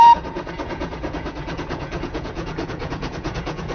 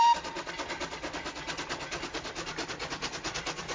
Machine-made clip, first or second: first